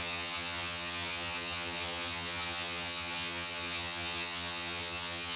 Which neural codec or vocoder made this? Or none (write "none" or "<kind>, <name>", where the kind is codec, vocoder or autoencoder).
vocoder, HiFi-GAN